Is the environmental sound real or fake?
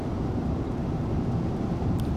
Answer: fake